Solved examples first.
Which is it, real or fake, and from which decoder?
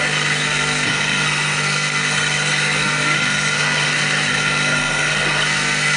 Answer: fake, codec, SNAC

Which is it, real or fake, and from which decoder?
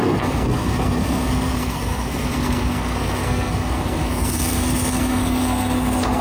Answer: fake, codec, SNAC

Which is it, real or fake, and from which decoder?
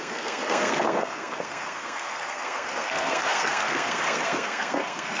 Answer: fake, codec, SNAC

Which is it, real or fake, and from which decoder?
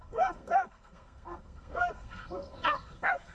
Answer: fake, codec, SNAC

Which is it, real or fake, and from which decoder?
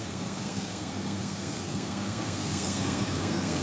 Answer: fake, codec, SNAC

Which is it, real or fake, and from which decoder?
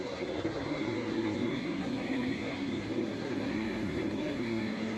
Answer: fake, codec, SNAC